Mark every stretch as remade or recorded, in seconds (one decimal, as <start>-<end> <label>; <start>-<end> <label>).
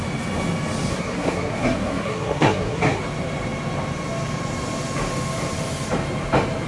0.0-0.9 recorded; 0.9-3.0 remade; 3.0-6.7 recorded